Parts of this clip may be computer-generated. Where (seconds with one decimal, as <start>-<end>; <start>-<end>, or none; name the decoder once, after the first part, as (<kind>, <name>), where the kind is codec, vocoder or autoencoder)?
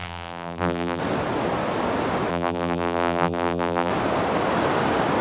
0.0-1.0 (vocoder, BigVGAN v2); 2.3-3.9